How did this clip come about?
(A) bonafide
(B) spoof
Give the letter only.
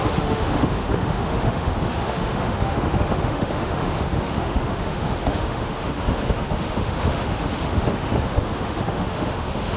B